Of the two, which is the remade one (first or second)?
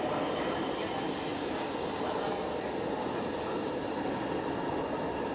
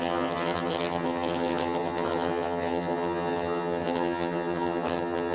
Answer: second